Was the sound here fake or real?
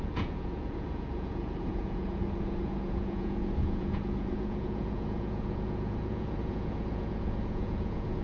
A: fake